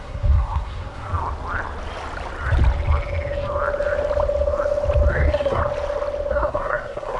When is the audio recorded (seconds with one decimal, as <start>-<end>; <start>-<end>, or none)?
1.1-5.1; 5.6-6.3